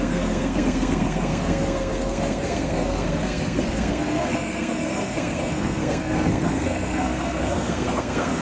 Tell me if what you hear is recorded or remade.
remade